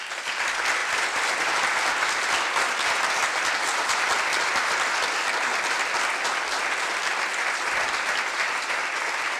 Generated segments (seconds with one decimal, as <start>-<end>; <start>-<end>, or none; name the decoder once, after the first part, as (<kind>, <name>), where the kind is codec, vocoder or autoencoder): none

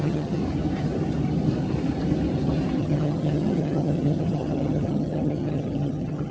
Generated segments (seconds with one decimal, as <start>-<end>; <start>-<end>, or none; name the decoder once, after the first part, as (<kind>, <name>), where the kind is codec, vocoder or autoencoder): 0.0-0.4 (vocoder, HiFi-GAN); 2.8-6.3

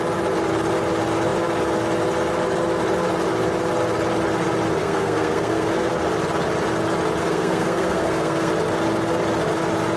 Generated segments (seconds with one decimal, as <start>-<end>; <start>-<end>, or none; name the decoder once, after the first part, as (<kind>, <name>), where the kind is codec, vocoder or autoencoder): 4.8-5.9 (codec, SNAC); 7.2-8.5